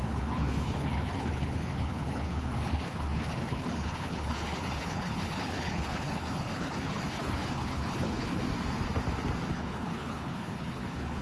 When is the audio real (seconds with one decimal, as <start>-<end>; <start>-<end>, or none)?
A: 8.4-9.5